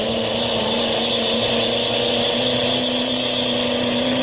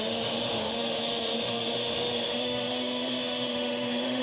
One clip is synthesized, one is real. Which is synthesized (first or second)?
second